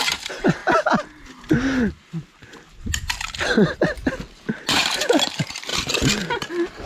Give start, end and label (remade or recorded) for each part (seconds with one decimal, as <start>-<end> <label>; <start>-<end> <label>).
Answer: 0.0-0.6 remade; 0.6-4.3 recorded; 4.3-6.9 remade